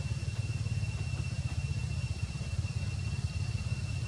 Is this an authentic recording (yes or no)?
yes